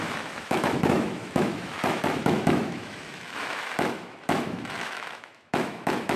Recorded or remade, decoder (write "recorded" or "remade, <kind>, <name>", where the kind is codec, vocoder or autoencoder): remade, autoencoder, DAC-VAE